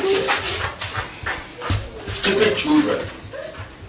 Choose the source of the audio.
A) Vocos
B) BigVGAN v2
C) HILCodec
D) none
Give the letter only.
D